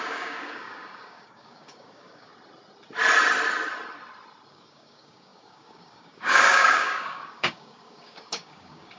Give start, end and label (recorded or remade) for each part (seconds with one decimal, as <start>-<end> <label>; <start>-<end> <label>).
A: 0.0-2.3 remade; 2.3-4.5 recorded; 4.5-9.0 remade